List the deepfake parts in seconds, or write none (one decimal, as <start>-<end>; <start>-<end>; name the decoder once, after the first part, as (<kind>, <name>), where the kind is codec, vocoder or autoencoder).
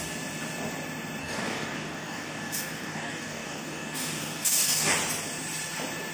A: 1.2-4.9 (codec, DAC)